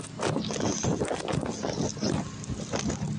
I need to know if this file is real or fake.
real